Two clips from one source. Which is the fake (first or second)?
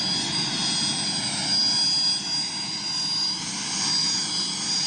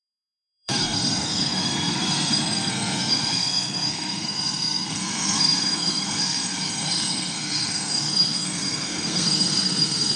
second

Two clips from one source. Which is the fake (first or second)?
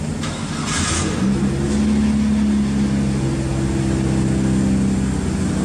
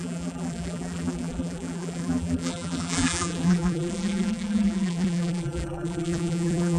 second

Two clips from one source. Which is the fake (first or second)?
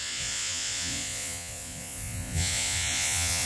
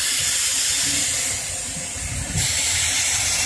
first